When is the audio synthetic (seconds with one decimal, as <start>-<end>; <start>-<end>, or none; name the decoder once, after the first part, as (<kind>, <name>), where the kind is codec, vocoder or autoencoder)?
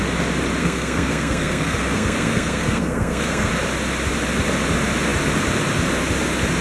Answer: 0.6-3.5 (codec, SNAC)